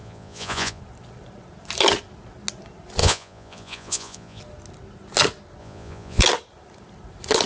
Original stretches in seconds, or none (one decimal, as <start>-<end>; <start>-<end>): 0.8-3.0; 4.4-5.6; 6.2-7.5